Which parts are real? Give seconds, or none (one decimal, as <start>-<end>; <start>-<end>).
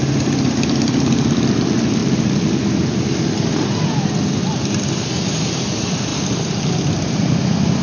0.0-7.8